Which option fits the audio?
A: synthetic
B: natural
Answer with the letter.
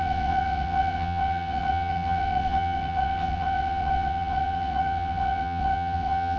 A